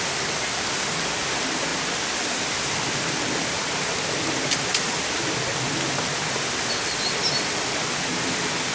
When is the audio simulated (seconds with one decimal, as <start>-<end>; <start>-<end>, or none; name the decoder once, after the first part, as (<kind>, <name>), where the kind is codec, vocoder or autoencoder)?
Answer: none